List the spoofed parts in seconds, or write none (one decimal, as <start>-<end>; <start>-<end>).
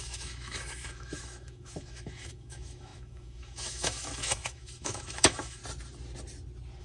0.0-5.6